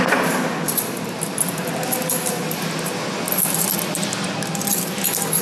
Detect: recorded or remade recorded